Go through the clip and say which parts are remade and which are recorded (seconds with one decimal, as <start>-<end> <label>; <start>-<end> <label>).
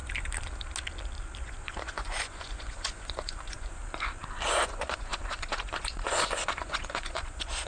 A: 0.0-1.4 recorded; 1.4-3.8 remade; 3.8-4.5 recorded; 4.5-7.7 remade